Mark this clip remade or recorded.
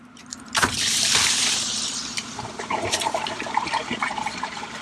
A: remade